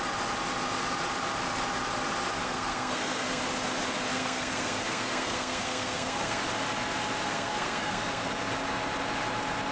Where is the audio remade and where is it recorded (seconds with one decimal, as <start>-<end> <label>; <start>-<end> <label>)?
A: 0.0-2.4 recorded; 2.4-3.4 remade; 3.4-4.1 recorded; 4.1-6.4 remade; 6.4-7.2 recorded; 7.2-8.3 remade; 8.3-9.7 recorded